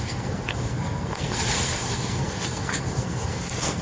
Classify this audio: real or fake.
fake